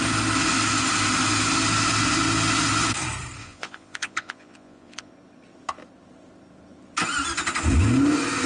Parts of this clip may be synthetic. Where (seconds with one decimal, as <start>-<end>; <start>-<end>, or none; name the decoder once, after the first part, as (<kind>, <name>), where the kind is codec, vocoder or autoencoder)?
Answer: 3.4-5.1 (vocoder, Vocos)